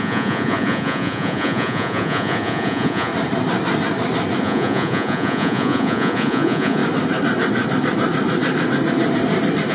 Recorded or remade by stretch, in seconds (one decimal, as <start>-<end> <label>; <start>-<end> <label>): 0.0-3.1 remade; 3.1-4.4 recorded; 4.4-6.8 remade; 6.8-9.7 recorded